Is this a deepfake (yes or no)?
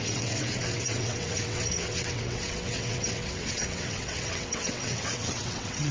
yes